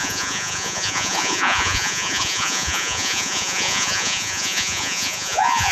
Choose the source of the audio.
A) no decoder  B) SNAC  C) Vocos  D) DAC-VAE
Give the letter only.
C